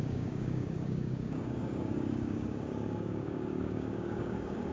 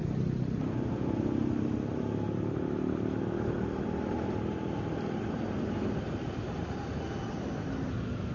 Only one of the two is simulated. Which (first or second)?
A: first